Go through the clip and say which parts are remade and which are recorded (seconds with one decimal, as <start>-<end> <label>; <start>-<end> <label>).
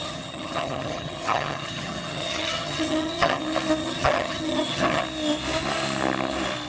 0.0-3.4 remade; 3.4-3.8 recorded; 3.8-5.0 remade; 5.0-6.7 recorded